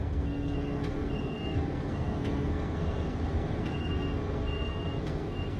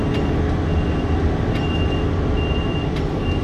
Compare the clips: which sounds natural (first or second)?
second